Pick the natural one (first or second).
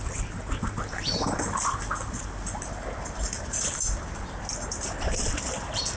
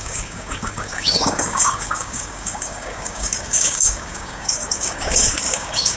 first